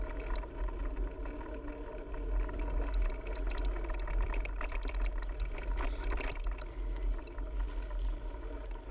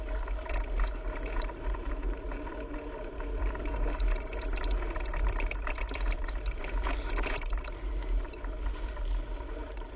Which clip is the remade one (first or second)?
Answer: second